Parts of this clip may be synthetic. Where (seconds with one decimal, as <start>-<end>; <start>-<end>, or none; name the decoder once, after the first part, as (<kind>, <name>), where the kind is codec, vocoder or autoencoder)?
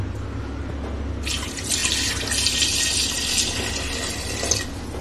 none